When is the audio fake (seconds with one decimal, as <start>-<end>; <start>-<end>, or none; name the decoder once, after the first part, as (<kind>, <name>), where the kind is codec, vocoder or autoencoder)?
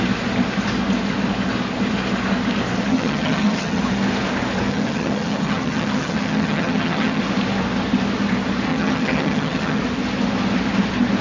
2.9-3.8 (vocoder, HiFi-GAN); 4.7-7.2; 8.7-9.8